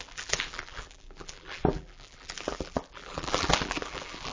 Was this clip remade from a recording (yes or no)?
yes